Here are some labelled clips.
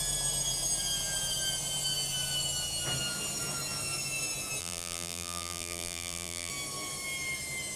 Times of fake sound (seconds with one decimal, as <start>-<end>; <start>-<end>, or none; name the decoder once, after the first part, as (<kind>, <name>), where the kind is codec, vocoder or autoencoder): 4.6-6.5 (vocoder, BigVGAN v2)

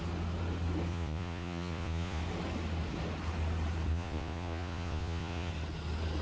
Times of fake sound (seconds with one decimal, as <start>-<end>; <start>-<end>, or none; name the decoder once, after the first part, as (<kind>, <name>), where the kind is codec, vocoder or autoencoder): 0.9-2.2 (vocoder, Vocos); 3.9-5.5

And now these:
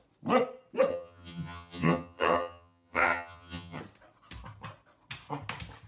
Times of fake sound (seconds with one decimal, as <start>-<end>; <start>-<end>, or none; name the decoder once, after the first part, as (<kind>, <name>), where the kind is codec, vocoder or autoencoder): 0.9-3.8 (vocoder, HiFi-GAN)